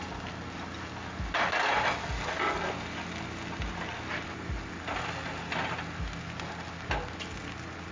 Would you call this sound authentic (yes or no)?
yes